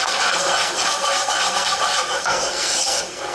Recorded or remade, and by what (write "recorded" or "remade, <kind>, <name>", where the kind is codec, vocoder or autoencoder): remade, codec, SNAC